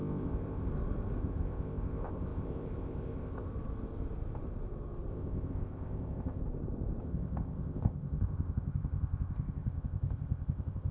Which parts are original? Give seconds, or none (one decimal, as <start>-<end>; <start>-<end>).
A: 0.7-1.2; 3.5-5.1; 6.4-7.0